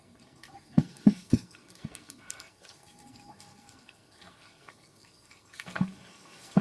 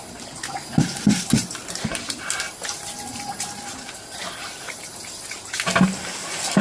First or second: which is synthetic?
first